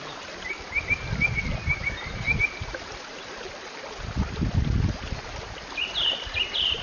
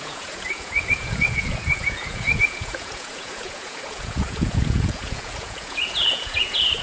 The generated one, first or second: second